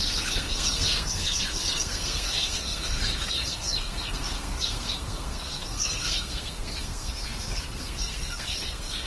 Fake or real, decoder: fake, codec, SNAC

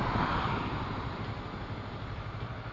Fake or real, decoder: real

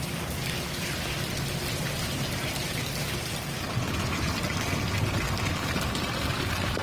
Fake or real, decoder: real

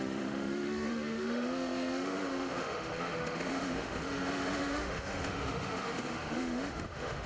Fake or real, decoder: fake, autoencoder, DAC-VAE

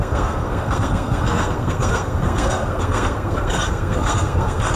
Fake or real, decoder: fake, codec, SNAC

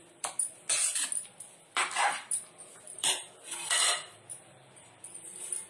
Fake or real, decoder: fake, vocoder, BigVGAN v2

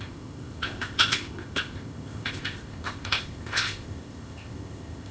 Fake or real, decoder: fake, codec, ZipCodec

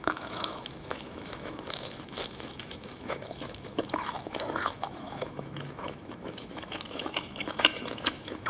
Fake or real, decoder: fake, autoencoder, DAC-VAE